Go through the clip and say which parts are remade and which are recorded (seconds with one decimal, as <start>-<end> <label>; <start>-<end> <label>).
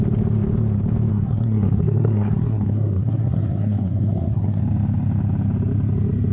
0.0-1.1 recorded; 1.1-4.6 remade; 4.6-6.3 recorded